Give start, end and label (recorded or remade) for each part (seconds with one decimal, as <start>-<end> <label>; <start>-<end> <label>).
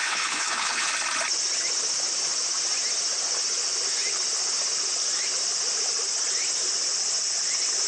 0.0-0.9 remade; 0.9-7.9 recorded